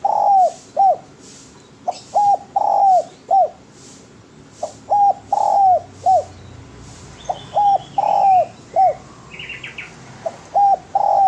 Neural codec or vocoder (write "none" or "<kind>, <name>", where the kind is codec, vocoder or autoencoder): none